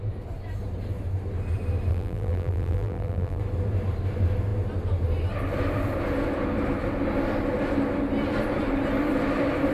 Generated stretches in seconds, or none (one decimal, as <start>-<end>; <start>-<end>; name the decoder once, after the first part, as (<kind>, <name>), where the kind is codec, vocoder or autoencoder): 1.9-3.4 (vocoder, BigVGAN v2)